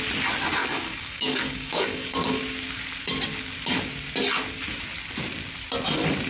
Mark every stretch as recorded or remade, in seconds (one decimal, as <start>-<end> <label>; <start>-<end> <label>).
0.0-0.6 recorded; 0.6-2.4 remade; 2.4-6.3 recorded